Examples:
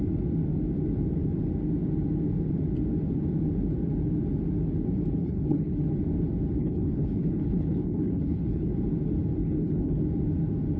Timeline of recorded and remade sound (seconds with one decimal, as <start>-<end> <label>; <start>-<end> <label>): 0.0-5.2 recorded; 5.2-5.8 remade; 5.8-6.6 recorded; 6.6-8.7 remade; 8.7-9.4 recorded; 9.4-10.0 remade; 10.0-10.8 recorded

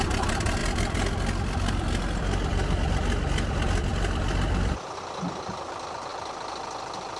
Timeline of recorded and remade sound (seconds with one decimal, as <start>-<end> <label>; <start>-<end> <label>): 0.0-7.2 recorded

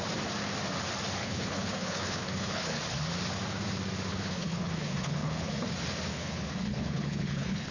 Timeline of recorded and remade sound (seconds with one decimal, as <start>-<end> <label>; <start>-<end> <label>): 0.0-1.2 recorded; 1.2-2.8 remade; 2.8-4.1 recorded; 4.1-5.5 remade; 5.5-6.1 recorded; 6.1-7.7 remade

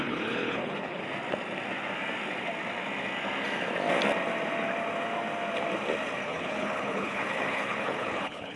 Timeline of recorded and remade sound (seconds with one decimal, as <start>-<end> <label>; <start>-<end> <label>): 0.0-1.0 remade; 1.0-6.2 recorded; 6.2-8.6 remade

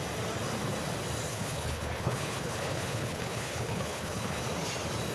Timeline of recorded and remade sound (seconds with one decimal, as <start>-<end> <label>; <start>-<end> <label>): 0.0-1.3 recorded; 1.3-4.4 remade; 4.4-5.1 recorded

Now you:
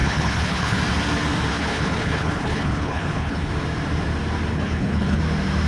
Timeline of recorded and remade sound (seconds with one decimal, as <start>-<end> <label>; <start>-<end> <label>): 0.0-0.8 remade; 0.8-1.5 recorded; 1.5-3.5 remade; 3.5-4.5 recorded; 4.5-5.2 remade; 5.2-5.7 recorded